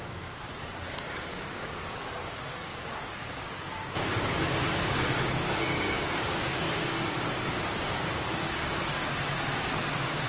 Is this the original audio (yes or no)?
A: no